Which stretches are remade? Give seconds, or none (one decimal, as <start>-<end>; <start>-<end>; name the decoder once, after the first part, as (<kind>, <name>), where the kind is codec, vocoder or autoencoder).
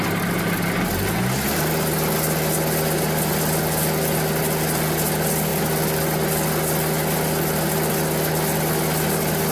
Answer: none